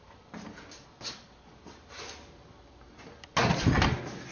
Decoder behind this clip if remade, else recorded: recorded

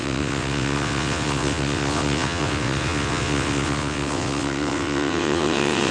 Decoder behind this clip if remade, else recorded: remade, vocoder, WaveNeXt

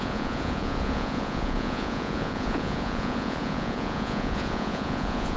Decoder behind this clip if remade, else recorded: remade, vocoder, Vocos